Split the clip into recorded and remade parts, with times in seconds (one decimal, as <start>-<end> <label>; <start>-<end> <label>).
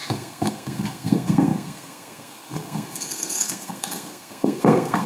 0.0-5.1 remade